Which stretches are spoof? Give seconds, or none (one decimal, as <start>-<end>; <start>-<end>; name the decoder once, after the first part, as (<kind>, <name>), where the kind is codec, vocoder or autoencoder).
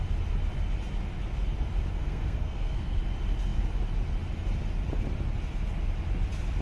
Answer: 1.9-3.0 (codec, SNAC)